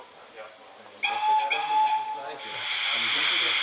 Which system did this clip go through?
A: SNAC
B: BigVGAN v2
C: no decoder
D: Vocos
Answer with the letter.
C